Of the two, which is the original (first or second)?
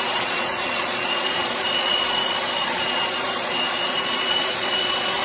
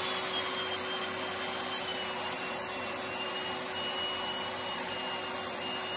second